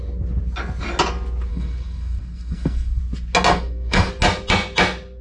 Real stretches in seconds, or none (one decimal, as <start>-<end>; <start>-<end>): 0.0-1.5; 3.0-3.5; 4.1-5.2